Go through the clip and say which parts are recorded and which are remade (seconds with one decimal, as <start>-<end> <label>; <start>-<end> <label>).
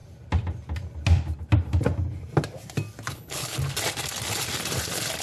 0.0-3.1 recorded; 3.1-3.6 remade; 3.6-5.2 recorded